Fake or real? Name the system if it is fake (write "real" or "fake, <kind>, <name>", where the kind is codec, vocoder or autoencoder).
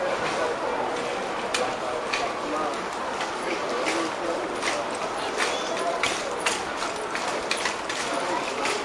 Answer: real